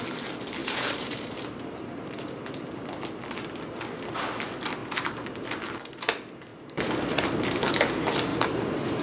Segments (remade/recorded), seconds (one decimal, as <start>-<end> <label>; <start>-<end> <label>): 0.0-0.6 recorded; 0.6-2.5 remade; 2.5-4.8 recorded; 4.8-5.5 remade; 5.5-6.5 recorded; 6.5-7.7 remade; 7.7-8.3 recorded; 8.3-9.0 remade